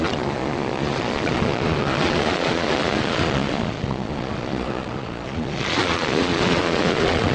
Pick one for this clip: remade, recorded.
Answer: remade